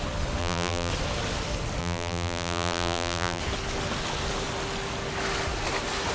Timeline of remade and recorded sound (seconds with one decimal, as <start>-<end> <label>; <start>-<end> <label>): 0.0-0.4 recorded; 0.4-0.9 remade; 0.9-1.8 recorded; 1.8-3.4 remade; 3.4-6.1 recorded